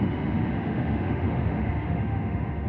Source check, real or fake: fake